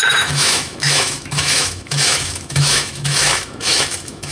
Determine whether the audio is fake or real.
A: fake